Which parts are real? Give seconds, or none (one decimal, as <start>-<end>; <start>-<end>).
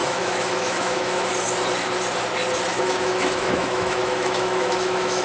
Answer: 1.3-2.7